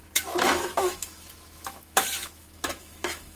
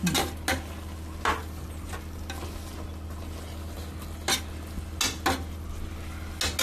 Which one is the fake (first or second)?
first